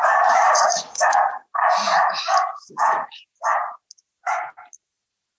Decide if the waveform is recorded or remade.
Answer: recorded